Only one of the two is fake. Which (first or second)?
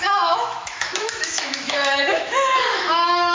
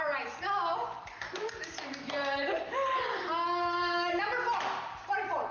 first